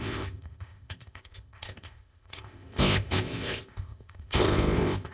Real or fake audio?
fake